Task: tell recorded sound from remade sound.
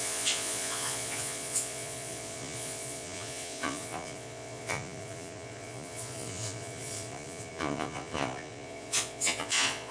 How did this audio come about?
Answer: remade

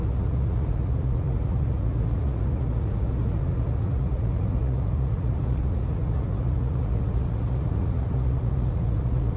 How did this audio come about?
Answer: remade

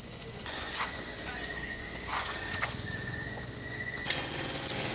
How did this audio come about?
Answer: remade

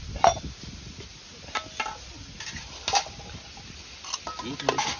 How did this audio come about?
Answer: recorded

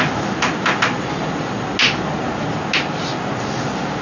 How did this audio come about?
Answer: recorded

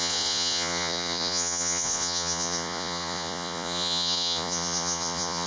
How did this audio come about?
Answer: remade